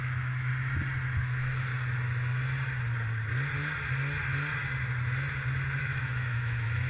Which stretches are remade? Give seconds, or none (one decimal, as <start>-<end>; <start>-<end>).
0.0-0.5; 1.2-1.7; 5.8-6.9